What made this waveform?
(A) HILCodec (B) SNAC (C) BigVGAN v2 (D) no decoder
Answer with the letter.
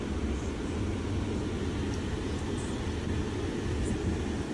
D